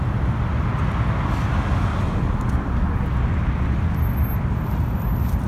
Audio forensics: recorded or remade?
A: recorded